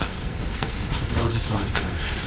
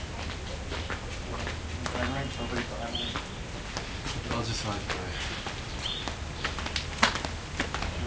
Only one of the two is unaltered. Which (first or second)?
second